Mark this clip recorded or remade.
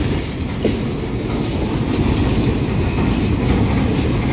recorded